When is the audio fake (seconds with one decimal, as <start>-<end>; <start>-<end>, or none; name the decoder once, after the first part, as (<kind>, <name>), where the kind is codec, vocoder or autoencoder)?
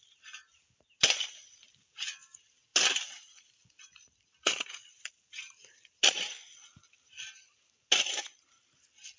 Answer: none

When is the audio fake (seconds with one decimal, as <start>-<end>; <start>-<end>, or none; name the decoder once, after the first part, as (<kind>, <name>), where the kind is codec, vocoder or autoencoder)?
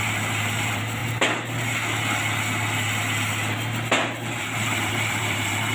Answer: 0.0-1.0 (vocoder, BigVGAN v2); 4.4-5.7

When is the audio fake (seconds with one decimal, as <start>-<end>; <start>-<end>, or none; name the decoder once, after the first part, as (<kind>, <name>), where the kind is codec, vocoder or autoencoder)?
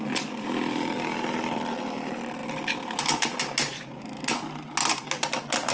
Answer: none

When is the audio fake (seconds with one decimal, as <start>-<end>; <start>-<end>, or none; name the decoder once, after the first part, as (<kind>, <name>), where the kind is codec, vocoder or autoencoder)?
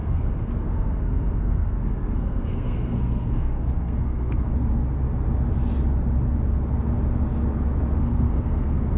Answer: 0.0-4.5 (codec, SNAC); 8.0-9.0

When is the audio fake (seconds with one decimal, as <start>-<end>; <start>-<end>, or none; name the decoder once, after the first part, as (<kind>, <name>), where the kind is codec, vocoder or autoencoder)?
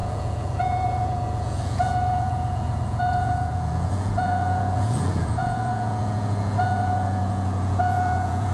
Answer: 0.0-8.5 (vocoder, Vocos)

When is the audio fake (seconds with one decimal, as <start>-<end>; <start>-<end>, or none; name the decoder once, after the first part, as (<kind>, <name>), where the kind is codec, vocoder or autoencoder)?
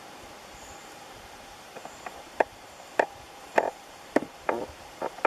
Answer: 0.0-5.3 (vocoder, BigVGAN v2)